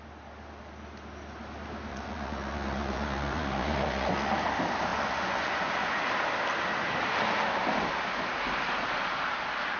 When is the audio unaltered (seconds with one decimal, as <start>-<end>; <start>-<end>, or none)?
0.0-1.9; 4.5-4.9; 6.0-9.8